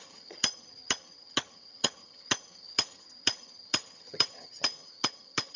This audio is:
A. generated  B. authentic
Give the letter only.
A